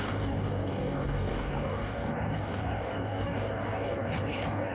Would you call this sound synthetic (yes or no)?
yes